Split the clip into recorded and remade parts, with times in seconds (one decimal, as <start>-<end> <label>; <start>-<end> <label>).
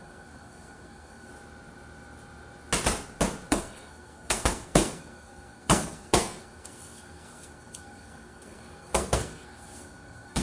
0.0-1.3 remade; 1.3-3.5 recorded; 3.5-10.4 remade